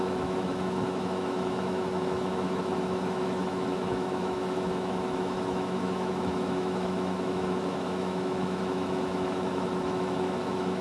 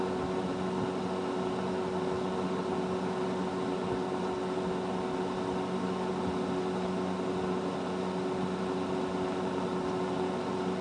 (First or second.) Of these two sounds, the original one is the second